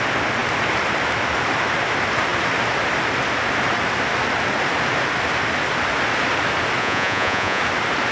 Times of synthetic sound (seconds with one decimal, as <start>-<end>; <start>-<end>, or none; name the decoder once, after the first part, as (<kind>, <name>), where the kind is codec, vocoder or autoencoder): 6.8-7.6 (vocoder, Vocos)